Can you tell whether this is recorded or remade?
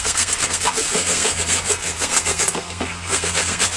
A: remade